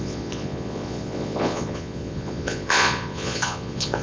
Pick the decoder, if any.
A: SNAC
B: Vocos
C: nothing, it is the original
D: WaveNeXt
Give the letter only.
B